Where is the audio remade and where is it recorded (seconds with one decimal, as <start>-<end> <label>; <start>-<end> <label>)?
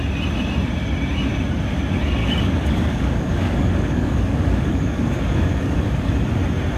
0.0-2.2 recorded; 2.2-6.1 remade; 6.1-6.8 recorded